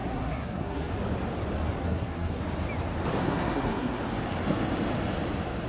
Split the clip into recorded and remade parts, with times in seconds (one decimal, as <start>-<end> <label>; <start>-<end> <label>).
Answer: 0.0-0.9 remade; 0.9-1.8 recorded; 1.8-2.4 remade; 2.4-3.2 recorded; 3.2-4.0 remade; 4.0-5.7 recorded